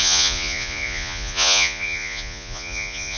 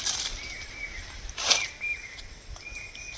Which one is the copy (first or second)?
first